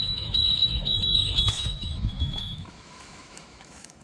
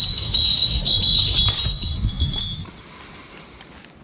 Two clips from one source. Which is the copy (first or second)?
first